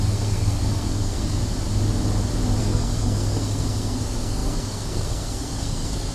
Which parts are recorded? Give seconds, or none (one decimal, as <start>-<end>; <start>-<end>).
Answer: 1.4-2.6